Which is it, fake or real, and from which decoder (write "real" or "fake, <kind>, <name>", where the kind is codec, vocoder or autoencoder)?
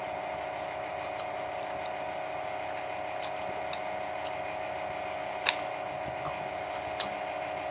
real